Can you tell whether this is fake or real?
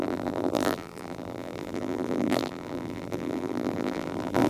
fake